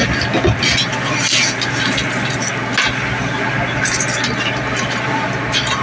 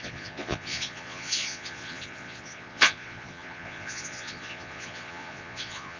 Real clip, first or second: first